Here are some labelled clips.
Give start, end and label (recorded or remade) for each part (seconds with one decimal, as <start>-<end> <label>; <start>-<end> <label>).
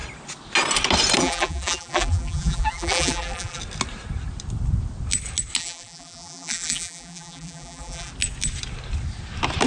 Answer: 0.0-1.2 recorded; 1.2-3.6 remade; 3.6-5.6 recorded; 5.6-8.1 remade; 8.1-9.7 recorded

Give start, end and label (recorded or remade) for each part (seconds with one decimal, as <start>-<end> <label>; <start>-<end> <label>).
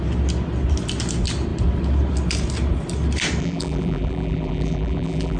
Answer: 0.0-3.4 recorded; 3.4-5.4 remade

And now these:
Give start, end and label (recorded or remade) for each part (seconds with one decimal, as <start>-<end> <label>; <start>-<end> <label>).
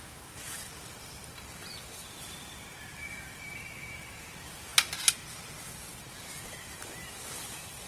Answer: 0.0-4.7 remade; 4.7-6.1 recorded; 6.1-7.9 remade